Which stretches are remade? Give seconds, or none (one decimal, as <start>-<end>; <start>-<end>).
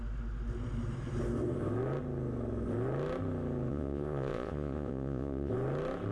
3.7-5.5